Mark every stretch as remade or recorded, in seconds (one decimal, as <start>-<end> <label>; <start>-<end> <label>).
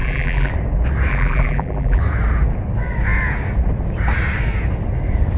0.0-0.5 remade; 0.5-1.1 recorded; 1.1-2.0 remade; 2.0-5.4 recorded